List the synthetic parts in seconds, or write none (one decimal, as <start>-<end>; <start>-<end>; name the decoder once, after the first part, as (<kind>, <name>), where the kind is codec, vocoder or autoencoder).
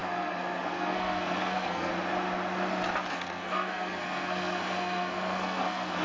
0.0-1.9 (codec, SNAC); 3.1-6.0